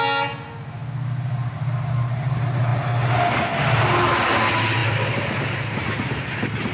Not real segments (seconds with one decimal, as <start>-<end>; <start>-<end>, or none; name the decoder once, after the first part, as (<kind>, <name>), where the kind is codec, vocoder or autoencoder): none